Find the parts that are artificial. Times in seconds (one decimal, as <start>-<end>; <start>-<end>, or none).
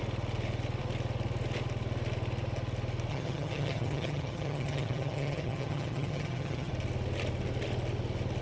3.1-6.7